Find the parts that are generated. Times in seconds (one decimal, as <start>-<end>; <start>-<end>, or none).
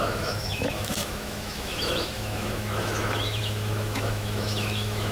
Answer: 0.0-5.1